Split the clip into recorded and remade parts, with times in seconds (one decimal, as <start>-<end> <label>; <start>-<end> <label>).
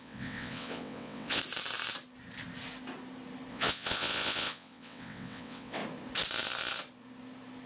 0.0-1.4 remade; 1.4-3.5 recorded; 3.5-5.8 remade; 5.8-7.7 recorded